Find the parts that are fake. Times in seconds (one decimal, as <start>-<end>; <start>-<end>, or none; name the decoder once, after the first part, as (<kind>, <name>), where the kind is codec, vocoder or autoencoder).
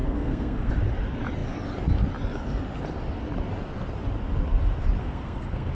0.0-0.7 (codec, SNAC); 5.0-5.7